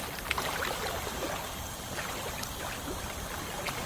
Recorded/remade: recorded